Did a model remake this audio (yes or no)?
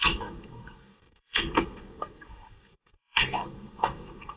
yes